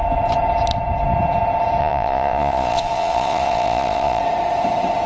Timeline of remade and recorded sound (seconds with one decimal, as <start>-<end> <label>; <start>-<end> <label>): 0.0-1.8 recorded; 1.8-4.2 remade; 4.2-5.1 recorded